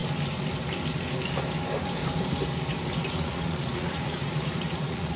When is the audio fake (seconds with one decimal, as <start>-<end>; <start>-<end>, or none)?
3.1-5.2